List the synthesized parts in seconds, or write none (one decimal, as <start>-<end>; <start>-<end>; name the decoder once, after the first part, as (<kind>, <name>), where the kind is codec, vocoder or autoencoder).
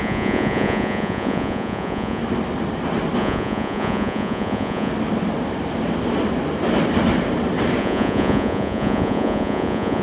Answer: 0.0-2.2 (vocoder, Vocos); 3.2-4.9; 7.8-10.0